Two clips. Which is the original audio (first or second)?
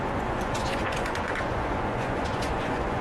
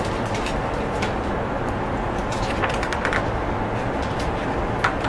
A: second